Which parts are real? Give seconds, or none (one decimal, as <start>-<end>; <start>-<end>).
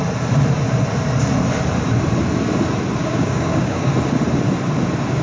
0.0-3.0; 3.9-5.2